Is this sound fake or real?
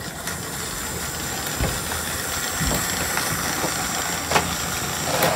real